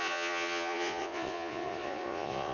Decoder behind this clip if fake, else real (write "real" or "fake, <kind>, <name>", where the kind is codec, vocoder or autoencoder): fake, vocoder, Vocos